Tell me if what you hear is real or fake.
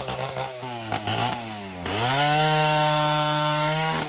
fake